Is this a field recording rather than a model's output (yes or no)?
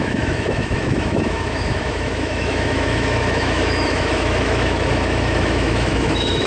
no